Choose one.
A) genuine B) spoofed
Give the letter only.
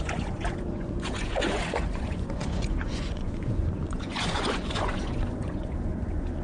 B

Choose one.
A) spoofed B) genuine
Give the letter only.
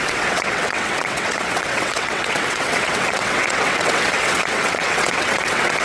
A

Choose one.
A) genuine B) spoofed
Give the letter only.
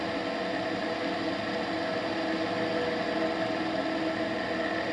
A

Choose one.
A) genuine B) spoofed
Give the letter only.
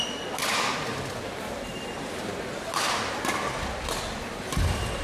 A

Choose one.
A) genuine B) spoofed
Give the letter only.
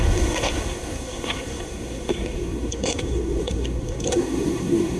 B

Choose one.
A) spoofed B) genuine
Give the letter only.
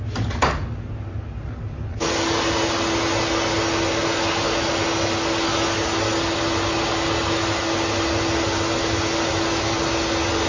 B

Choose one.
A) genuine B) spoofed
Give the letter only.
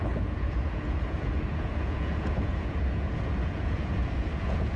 B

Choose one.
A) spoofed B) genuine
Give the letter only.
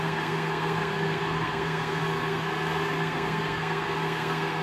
A